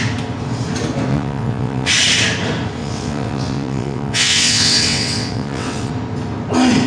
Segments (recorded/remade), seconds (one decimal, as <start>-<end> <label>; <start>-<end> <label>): 0.0-1.1 recorded; 1.1-1.9 remade; 1.9-2.8 recorded; 2.8-5.9 remade; 5.9-6.9 recorded